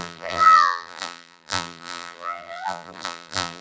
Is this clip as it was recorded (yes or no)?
no